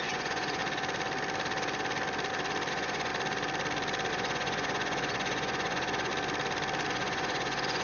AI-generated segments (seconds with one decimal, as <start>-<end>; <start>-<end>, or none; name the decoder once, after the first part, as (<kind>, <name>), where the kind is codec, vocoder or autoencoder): 0.0-0.6 (vocoder, Vocos); 2.7-3.1; 4.1-6.1; 6.9-7.8